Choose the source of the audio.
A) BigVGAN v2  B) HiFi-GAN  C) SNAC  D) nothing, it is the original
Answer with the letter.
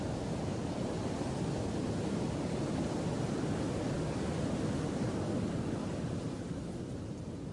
D